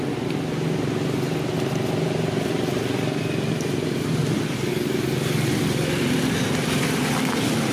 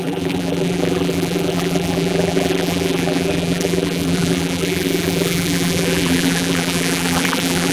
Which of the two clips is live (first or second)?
first